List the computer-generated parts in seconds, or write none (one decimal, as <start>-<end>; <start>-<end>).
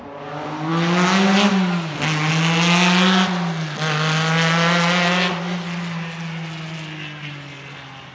none